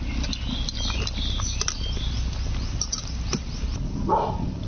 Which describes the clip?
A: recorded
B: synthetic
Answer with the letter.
A